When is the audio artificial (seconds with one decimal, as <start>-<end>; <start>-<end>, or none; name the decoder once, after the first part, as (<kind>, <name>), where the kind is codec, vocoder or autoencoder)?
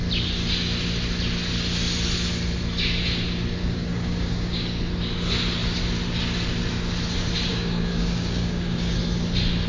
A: 3.6-4.8 (codec, DAC); 7.5-8.9